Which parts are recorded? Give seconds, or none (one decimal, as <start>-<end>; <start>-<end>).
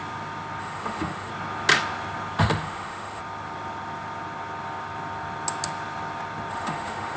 0.0-0.6; 1.3-2.4; 3.2-6.5